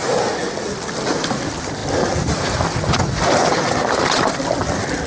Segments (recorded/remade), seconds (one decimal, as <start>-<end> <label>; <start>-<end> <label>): 0.0-5.1 recorded